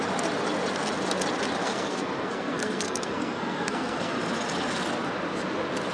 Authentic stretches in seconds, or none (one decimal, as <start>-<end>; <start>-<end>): 0.0-1.6; 4.2-5.9